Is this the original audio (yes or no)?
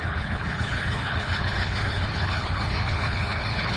no